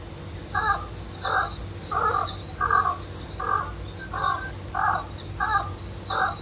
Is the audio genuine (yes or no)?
yes